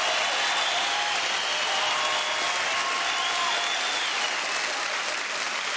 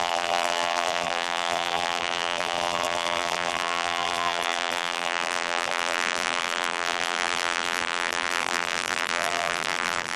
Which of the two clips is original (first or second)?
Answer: first